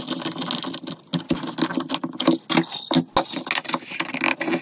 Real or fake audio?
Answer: real